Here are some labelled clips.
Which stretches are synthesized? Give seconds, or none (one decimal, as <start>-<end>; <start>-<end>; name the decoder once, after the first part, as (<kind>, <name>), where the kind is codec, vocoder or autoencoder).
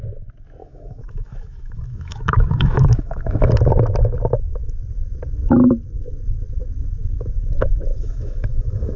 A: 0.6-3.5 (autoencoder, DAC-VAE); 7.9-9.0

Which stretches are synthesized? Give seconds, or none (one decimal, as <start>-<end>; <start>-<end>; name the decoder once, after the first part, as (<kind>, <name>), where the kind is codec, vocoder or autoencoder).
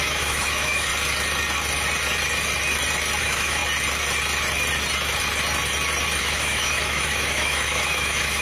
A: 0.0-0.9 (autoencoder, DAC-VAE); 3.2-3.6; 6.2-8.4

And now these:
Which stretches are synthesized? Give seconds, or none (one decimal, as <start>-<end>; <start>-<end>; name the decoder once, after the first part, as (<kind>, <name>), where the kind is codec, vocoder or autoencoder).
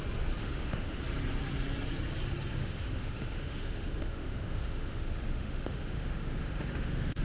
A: 0.4-1.0 (autoencoder, DAC-VAE); 2.6-7.2